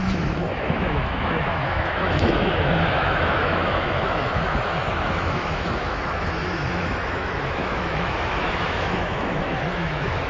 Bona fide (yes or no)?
no